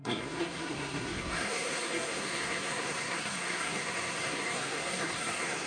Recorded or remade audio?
remade